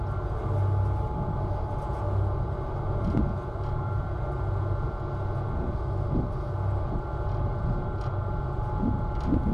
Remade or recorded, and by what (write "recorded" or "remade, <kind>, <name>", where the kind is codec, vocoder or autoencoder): recorded